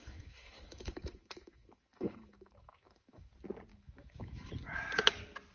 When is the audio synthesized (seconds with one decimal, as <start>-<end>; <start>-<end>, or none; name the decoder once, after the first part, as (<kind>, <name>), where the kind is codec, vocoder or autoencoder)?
0.0-3.3 (autoencoder, DAC-VAE); 3.7-4.5